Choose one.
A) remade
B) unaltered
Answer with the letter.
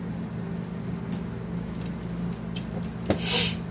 B